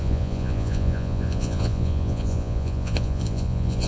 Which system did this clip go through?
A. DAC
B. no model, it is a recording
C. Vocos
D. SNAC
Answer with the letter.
C